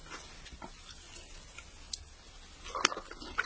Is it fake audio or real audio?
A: real